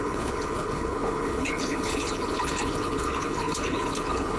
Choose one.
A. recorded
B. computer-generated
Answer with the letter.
B